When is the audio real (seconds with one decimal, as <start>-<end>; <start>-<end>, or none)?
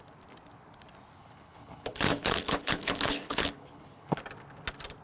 0.0-1.2; 4.2-5.0